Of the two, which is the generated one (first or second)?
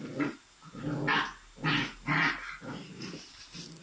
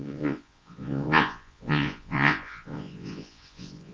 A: second